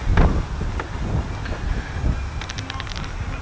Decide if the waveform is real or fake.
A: real